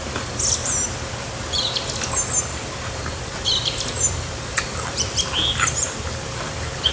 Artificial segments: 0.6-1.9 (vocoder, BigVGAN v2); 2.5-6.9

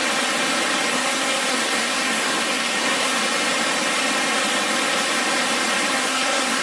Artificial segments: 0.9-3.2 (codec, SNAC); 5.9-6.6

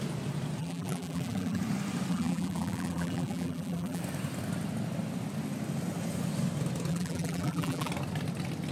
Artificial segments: 0.6-1.6 (vocoder, BigVGAN v2); 2.1-4.0; 6.9-7.9

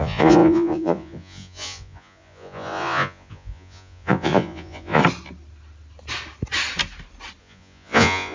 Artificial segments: 0.0-5.0 (vocoder, Vocos); 7.4-8.3